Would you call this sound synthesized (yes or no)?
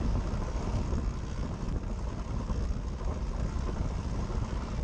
no